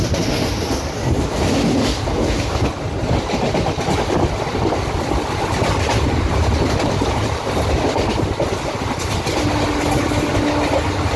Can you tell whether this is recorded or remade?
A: recorded